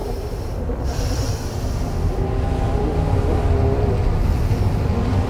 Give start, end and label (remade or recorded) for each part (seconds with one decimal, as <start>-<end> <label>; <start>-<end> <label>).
0.0-5.3 recorded